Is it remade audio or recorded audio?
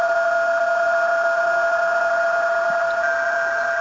recorded